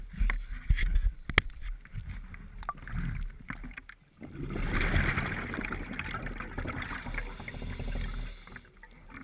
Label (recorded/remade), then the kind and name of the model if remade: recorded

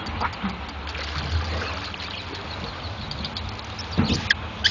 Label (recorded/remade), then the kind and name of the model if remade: recorded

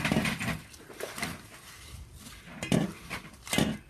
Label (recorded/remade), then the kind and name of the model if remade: remade, vocoder, BigVGAN v2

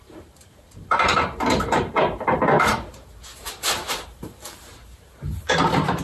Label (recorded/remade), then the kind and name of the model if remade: remade, vocoder, BigVGAN v2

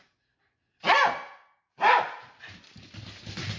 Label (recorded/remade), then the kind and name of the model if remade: recorded